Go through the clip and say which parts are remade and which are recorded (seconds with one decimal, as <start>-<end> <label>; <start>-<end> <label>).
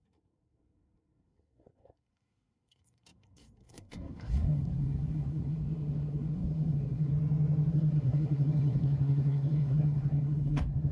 0.0-7.1 remade; 7.1-7.7 recorded; 7.7-10.9 remade